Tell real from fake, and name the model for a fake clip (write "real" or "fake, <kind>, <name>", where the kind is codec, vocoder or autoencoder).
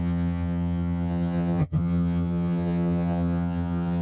fake, vocoder, HiFi-GAN